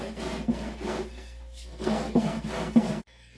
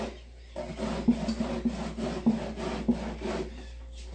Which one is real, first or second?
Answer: second